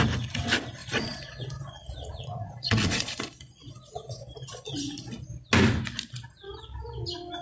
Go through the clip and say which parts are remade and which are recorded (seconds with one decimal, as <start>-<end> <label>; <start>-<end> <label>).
0.0-0.8 recorded; 0.8-5.2 remade; 5.2-7.4 recorded